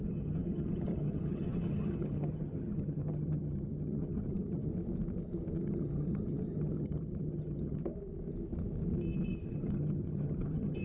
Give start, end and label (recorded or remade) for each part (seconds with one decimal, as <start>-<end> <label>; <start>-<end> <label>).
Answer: 0.0-4.7 remade; 4.7-5.6 recorded; 5.6-7.8 remade; 7.8-9.5 recorded; 9.5-10.8 remade